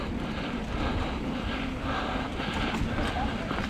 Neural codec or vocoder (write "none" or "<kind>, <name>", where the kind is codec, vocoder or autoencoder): none